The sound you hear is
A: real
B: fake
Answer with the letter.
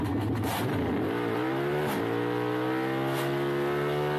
A